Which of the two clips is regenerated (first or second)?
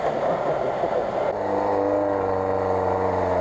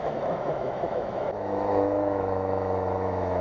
second